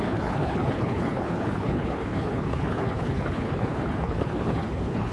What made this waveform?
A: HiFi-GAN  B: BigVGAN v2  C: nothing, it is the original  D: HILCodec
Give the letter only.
D